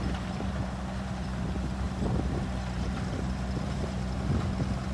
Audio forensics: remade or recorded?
remade